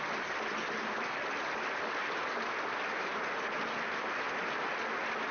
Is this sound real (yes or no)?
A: yes